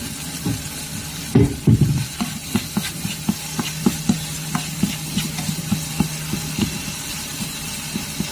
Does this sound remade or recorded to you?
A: recorded